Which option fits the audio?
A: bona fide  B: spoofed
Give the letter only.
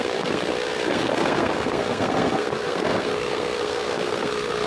B